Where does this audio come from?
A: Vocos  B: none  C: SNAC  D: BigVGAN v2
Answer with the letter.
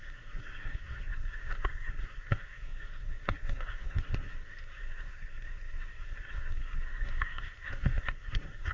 C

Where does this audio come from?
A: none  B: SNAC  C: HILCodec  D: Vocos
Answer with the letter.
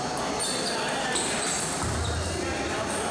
A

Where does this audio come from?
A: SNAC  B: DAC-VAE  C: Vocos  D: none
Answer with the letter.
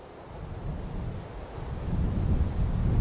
D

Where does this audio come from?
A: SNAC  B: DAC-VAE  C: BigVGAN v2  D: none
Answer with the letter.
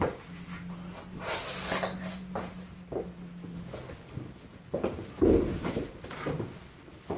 D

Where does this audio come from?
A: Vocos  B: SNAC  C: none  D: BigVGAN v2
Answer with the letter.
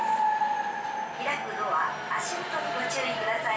C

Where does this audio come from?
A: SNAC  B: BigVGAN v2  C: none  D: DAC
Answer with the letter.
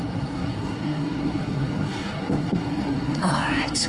A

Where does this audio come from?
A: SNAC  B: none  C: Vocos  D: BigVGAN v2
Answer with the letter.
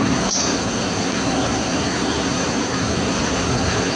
A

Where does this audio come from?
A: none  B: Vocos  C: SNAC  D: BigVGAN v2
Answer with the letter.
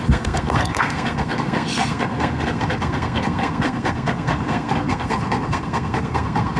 C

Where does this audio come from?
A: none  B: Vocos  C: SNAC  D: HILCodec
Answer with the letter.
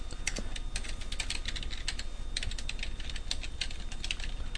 A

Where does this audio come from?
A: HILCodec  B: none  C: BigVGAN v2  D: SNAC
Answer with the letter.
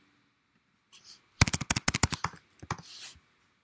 B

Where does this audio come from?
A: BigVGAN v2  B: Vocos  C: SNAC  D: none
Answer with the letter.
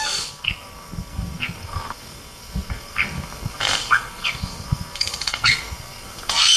C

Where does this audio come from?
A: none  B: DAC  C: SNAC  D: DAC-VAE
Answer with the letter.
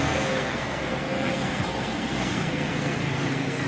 C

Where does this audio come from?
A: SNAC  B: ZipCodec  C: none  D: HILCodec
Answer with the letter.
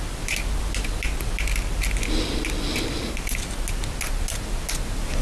C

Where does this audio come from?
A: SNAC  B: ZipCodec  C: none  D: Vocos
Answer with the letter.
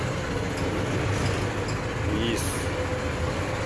C